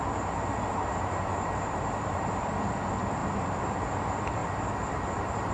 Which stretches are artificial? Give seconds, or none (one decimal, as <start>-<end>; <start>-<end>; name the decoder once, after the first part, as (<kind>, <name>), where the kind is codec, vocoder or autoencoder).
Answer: 0.7-2.1 (vocoder, BigVGAN v2); 3.2-3.8; 4.4-5.5

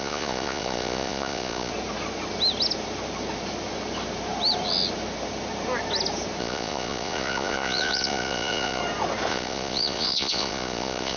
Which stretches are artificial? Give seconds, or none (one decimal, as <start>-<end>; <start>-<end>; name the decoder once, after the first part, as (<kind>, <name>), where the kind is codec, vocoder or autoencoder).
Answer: 0.0-1.7 (vocoder, Vocos); 6.4-8.8; 9.3-11.2

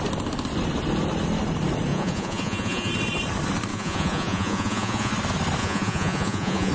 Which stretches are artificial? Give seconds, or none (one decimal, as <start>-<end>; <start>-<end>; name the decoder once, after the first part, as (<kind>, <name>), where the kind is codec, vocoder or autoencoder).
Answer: 1.9-2.9 (vocoder, Vocos); 3.7-5.1; 5.6-6.7

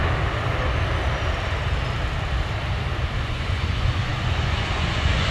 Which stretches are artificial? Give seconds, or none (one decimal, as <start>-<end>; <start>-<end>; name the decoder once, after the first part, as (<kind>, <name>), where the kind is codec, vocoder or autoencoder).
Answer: 3.2-5.3 (vocoder, Vocos)

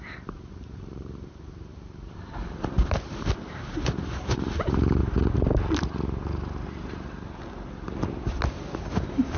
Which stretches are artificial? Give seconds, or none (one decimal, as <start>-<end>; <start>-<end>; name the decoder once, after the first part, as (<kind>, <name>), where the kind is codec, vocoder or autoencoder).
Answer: 0.0-5.0 (vocoder, BigVGAN v2); 8.8-9.4

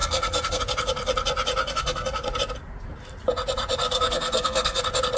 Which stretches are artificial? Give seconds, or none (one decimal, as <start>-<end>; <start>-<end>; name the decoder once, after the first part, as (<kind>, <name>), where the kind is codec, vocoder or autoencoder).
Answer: 0.0-0.6 (codec, SNAC); 1.6-2.2; 3.8-4.8

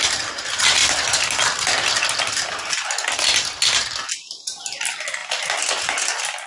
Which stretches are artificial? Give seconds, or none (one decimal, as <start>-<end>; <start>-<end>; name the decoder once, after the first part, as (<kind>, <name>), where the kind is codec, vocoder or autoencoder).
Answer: none

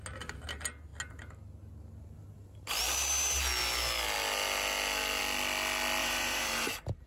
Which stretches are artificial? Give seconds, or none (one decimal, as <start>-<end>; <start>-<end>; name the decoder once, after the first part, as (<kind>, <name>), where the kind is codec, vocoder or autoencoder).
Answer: 6.0-7.1 (vocoder, BigVGAN v2)